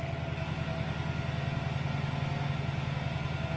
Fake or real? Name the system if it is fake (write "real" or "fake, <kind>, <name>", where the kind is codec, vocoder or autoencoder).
real